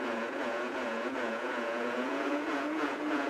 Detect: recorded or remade remade